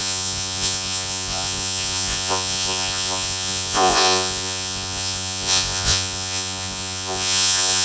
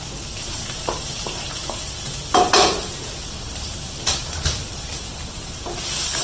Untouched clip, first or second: second